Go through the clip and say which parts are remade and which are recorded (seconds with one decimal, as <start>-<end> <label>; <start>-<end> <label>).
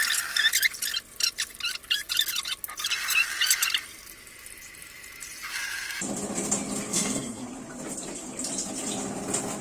0.0-6.9 recorded; 6.9-7.4 remade; 7.4-9.6 recorded